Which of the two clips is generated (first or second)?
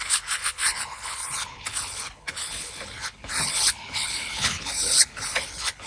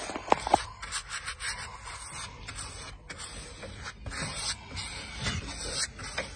first